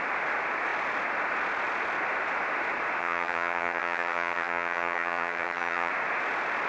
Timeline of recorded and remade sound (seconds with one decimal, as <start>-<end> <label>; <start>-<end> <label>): 0.0-3.0 recorded; 3.0-5.9 remade; 5.9-6.7 recorded